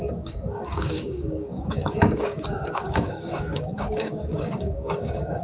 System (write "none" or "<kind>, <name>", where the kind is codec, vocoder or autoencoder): codec, DAC